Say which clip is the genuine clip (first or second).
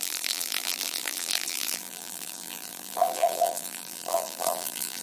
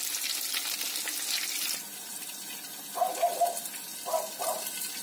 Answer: second